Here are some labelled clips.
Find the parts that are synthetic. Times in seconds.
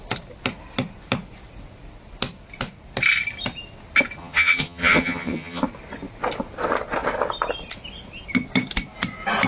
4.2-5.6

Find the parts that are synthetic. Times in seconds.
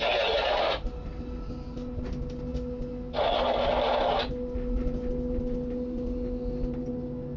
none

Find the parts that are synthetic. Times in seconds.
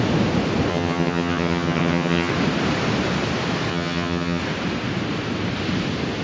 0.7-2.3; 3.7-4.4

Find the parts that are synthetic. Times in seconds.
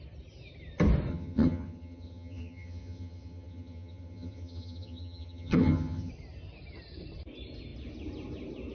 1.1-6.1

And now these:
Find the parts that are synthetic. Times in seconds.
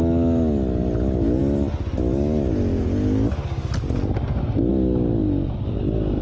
none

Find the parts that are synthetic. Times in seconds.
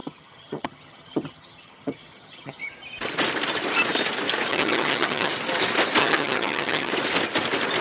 0.0-2.7; 4.5-5.3; 6.0-6.9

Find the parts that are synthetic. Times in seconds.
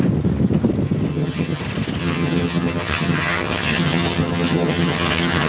1.1-1.6; 2.0-5.5